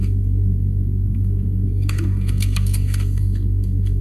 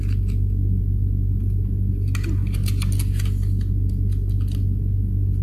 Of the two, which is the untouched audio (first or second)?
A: second